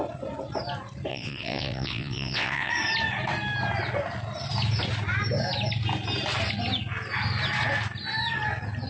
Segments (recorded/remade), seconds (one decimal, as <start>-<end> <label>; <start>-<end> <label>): 0.0-1.1 recorded; 1.1-2.7 remade; 2.7-8.9 recorded

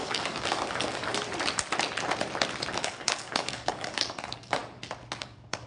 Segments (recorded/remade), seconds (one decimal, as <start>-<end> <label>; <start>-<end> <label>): 0.0-1.1 remade; 1.1-2.7 recorded; 2.7-4.6 remade; 4.6-5.2 recorded; 5.2-5.7 remade

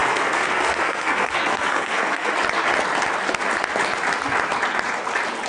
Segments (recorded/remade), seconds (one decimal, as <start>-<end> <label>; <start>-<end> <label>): 0.0-2.3 remade; 2.3-5.5 recorded

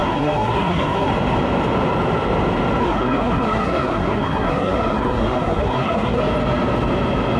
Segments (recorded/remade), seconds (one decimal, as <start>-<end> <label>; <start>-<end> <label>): 0.0-1.1 remade; 1.1-2.8 recorded; 2.8-6.2 remade; 6.2-7.4 recorded